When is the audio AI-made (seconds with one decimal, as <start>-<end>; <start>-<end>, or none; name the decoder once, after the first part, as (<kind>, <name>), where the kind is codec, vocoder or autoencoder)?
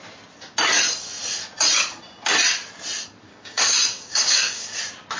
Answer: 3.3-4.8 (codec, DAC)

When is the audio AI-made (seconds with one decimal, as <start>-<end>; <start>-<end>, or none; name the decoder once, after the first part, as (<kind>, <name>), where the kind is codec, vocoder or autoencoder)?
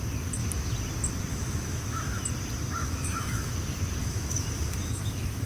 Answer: 1.3-2.2 (autoencoder, DAC-VAE); 2.8-3.5; 4.0-5.5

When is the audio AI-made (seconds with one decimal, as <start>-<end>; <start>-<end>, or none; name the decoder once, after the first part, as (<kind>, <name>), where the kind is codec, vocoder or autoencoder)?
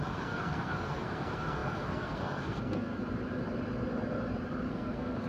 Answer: 0.0-3.0 (codec, SNAC); 4.7-5.3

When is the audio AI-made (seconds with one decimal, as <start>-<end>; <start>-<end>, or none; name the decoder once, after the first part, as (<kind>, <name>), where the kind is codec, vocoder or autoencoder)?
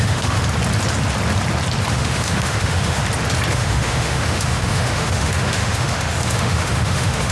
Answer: 0.0-0.4 (autoencoder, DAC-VAE); 1.9-3.0; 3.5-7.3